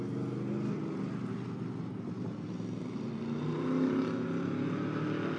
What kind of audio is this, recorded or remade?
recorded